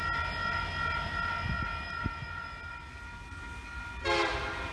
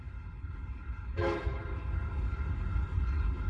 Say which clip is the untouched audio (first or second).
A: first